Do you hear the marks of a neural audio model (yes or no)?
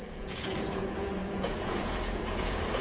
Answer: yes